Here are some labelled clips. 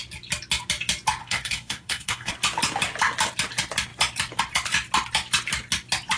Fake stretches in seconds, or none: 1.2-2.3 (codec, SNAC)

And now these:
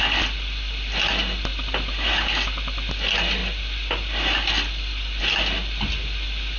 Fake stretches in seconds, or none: none

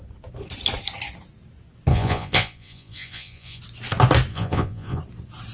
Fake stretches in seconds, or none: 1.9-3.6 (vocoder, Vocos); 4.3-5.0

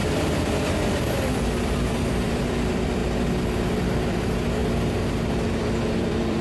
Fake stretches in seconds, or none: 0.0-3.0 (vocoder, BigVGAN v2); 3.7-4.6; 5.8-6.4

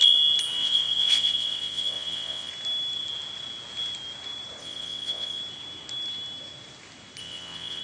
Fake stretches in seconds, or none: 0.6-2.5 (vocoder, WaveNeXt); 4.6-5.4; 7.2-7.8

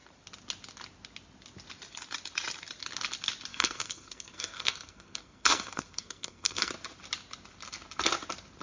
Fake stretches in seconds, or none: 3.5-6.7 (codec, SNAC)

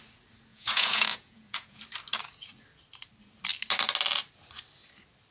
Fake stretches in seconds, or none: 0.5-1.8 (vocoder, Vocos)